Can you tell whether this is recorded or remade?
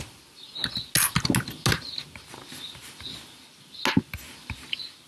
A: recorded